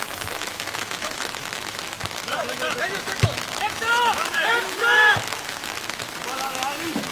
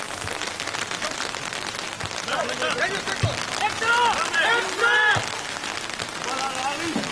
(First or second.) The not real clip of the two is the first